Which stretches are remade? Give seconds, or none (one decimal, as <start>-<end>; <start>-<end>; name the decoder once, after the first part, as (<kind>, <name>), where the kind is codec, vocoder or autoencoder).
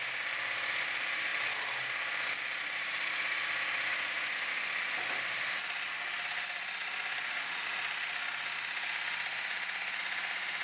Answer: 1.3-4.5 (vocoder, BigVGAN v2); 6.8-7.6